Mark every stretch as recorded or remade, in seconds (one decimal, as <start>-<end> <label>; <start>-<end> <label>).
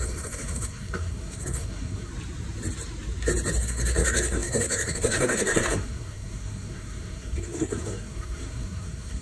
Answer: 0.0-2.1 remade; 2.1-3.6 recorded; 3.6-9.2 remade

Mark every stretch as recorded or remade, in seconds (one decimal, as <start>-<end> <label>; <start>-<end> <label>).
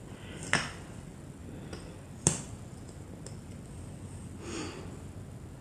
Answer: 0.0-5.6 recorded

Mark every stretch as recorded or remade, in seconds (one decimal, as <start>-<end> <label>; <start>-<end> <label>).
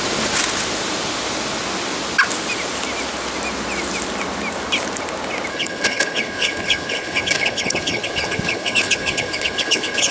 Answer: 0.0-5.5 recorded; 5.5-10.1 remade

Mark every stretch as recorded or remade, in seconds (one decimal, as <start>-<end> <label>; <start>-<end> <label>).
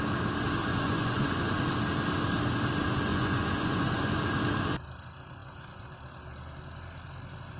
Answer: 0.0-0.7 recorded; 0.7-1.6 remade; 1.6-3.1 recorded; 3.1-4.2 remade; 4.2-5.4 recorded; 5.4-5.9 remade; 5.9-7.6 recorded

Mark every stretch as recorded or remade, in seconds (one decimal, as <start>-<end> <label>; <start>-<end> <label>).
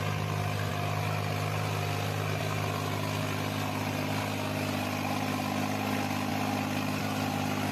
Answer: 0.0-7.7 recorded